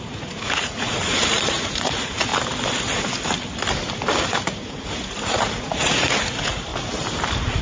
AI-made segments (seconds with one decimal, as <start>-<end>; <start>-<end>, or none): 0.0-2.3; 4.2-6.7